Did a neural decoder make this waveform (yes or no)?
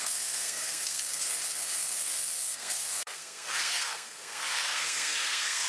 yes